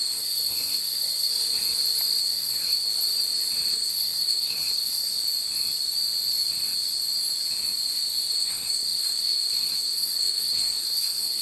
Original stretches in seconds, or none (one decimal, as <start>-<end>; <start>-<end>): 1.3-2.2; 2.9-3.7; 5.1-8.3